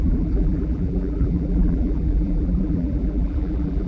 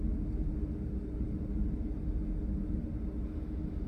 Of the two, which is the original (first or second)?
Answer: second